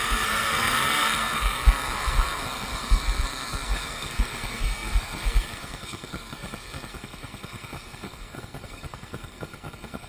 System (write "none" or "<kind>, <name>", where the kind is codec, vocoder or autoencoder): codec, SNAC